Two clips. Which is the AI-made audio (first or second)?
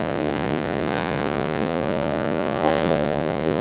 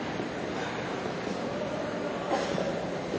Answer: first